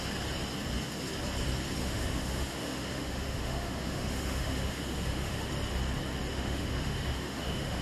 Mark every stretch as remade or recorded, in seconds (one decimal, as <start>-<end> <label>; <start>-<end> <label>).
0.0-1.8 recorded; 1.8-5.5 remade; 5.5-6.3 recorded; 6.3-7.8 remade